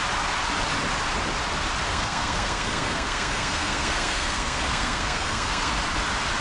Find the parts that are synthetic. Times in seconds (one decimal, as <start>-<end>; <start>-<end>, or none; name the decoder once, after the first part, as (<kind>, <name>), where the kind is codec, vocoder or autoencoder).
1.9-5.7 (codec, SNAC)